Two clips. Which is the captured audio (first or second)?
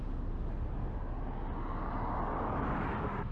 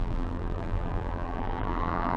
first